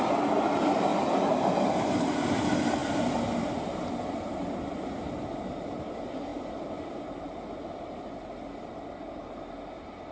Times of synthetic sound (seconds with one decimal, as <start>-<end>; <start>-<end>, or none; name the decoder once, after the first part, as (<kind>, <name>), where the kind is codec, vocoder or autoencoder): 0.0-0.9 (vocoder, BigVGAN v2); 1.6-2.8; 4.5-10.1